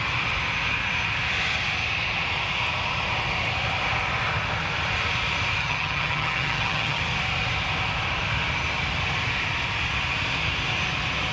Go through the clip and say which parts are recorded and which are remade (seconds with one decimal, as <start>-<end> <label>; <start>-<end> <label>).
0.0-5.6 recorded; 5.6-7.0 remade; 7.0-11.3 recorded